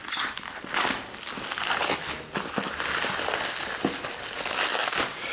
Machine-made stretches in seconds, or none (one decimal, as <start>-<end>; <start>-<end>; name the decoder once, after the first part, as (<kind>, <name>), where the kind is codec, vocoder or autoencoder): none